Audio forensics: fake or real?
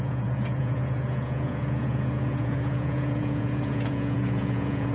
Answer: fake